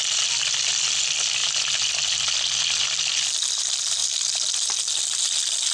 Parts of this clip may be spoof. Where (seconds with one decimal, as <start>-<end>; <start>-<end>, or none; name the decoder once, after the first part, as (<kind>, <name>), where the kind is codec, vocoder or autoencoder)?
none